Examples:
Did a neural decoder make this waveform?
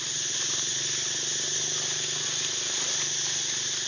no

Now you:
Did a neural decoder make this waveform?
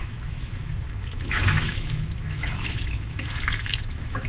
yes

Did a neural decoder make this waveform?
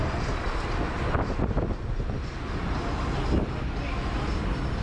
no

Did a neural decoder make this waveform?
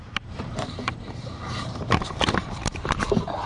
yes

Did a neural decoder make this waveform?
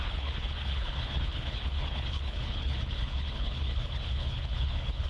yes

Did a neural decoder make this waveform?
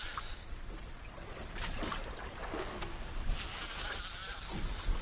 no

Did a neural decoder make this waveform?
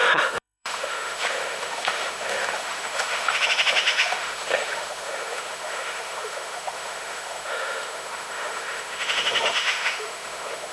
yes